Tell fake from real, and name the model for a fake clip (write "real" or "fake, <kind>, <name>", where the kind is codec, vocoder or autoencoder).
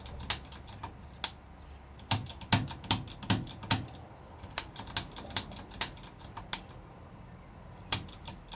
real